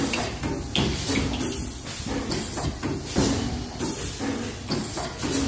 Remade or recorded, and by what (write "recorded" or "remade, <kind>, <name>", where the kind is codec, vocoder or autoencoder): recorded